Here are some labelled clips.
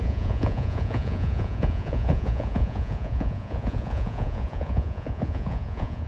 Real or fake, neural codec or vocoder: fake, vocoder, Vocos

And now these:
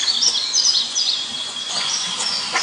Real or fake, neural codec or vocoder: fake, vocoder, Vocos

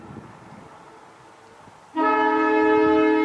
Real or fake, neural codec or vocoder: real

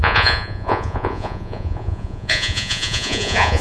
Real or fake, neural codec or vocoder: fake, vocoder, Vocos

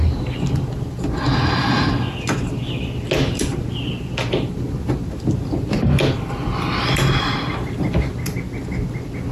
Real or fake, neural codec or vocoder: real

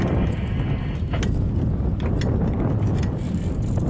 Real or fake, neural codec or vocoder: real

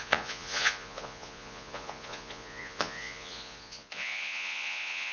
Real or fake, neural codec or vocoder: fake, vocoder, Vocos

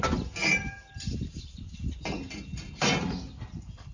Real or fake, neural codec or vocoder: real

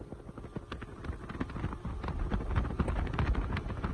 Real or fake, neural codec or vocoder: real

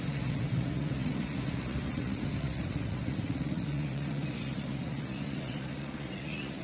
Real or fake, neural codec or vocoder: fake, vocoder, Vocos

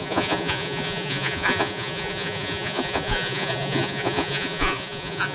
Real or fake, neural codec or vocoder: fake, vocoder, Vocos